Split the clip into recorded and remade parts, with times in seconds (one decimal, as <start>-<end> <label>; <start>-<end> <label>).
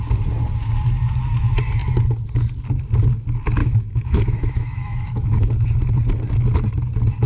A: 0.0-3.6 recorded; 3.6-5.5 remade; 5.5-7.3 recorded